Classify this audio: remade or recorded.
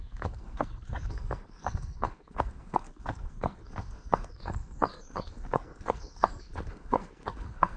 remade